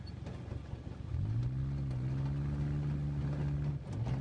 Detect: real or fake real